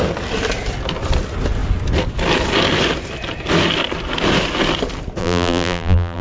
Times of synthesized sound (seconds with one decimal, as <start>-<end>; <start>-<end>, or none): 5.2-6.2